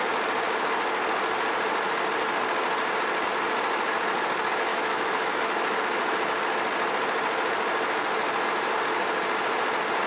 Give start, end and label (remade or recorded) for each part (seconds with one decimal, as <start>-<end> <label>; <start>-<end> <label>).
0.0-4.7 recorded; 4.7-5.8 remade; 5.8-10.1 recorded